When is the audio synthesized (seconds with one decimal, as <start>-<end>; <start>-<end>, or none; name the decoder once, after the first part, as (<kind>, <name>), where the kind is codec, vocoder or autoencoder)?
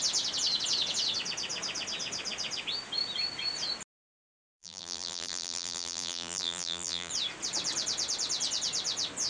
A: 4.4-7.1 (vocoder, BigVGAN v2)